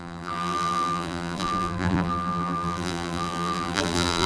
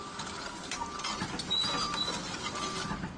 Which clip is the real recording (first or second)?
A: second